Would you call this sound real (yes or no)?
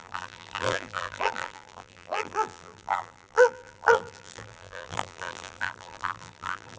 no